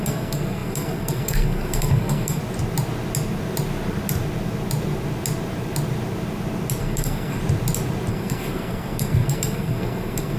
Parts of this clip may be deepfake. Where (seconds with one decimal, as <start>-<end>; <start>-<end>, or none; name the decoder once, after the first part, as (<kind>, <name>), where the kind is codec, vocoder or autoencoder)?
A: 0.0-2.4 (codec, SNAC); 6.8-7.4; 8.1-10.4